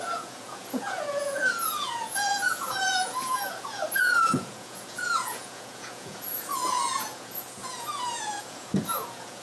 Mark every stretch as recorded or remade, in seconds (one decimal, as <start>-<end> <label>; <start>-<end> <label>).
0.0-9.4 remade